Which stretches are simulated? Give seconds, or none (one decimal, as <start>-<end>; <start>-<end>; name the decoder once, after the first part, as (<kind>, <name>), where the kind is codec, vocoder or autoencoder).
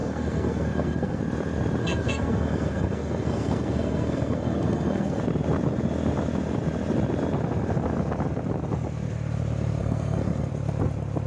0.0-1.2 (codec, SNAC); 1.8-5.2; 9.8-10.5